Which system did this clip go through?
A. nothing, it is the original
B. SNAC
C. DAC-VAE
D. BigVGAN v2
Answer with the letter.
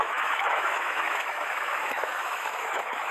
C